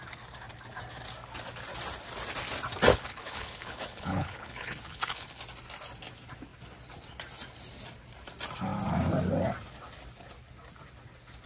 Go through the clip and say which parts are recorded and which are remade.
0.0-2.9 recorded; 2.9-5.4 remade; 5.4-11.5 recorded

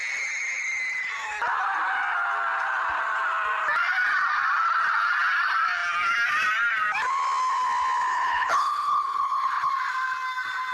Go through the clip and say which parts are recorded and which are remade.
0.0-8.1 recorded; 8.1-9.7 remade; 9.7-10.7 recorded

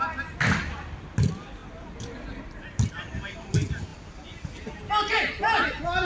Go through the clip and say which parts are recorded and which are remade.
0.0-6.0 recorded

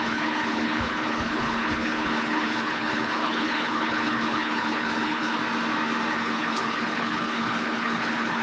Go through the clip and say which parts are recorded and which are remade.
0.0-5.4 remade; 5.4-6.1 recorded; 6.1-8.4 remade

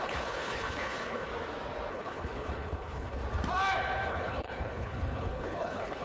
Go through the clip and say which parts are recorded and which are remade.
0.0-1.3 remade; 1.3-1.9 recorded; 1.9-3.2 remade; 3.2-4.1 recorded; 4.1-6.0 remade

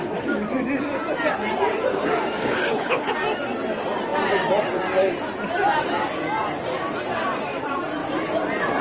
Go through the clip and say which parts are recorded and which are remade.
0.0-2.4 recorded; 2.4-3.1 remade; 3.1-8.8 recorded

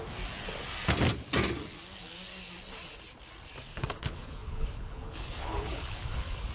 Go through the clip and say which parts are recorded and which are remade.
0.0-3.7 recorded; 3.7-6.5 remade

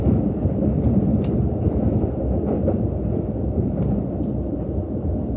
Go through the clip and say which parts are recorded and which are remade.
0.0-5.4 recorded